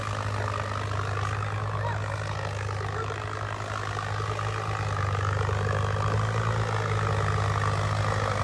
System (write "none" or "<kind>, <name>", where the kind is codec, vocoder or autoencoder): none